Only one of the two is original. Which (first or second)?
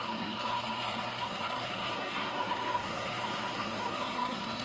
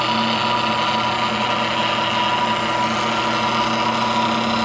second